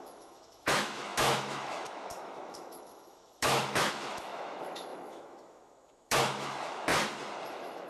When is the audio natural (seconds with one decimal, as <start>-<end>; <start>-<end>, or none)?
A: 6.9-7.5